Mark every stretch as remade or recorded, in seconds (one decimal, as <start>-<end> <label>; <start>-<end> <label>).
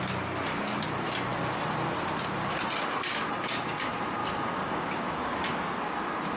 0.0-4.2 recorded; 4.2-5.4 remade; 5.4-6.4 recorded